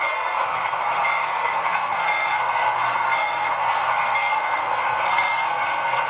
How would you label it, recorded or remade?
remade